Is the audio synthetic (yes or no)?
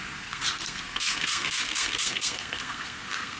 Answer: yes